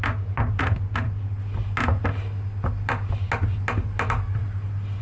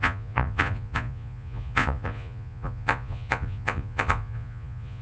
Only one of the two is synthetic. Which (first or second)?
second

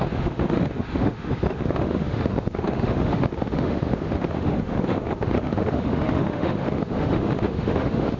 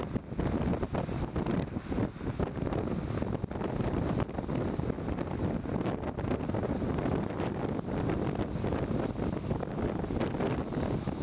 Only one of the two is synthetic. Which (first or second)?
first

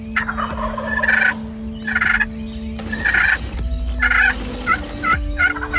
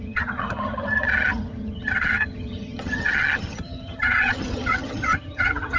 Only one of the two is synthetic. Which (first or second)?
second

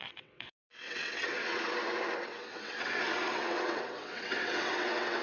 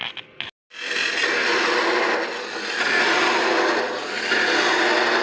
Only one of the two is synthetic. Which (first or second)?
first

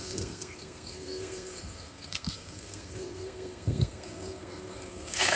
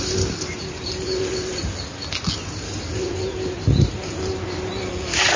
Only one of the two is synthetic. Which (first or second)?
first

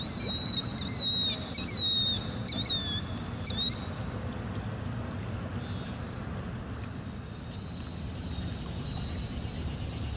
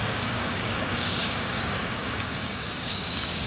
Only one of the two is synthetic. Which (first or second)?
second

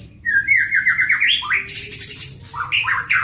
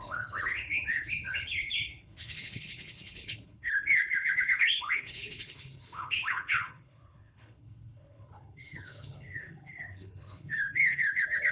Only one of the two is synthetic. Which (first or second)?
second